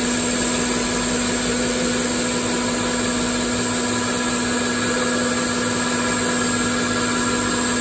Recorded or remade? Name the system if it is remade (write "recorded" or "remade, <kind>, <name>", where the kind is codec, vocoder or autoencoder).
recorded